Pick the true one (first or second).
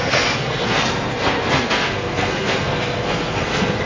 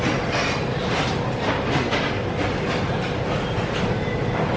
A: second